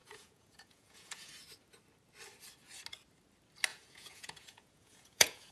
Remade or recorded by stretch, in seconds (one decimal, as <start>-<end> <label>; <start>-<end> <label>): 0.0-1.3 remade; 1.3-3.7 recorded; 3.7-5.5 remade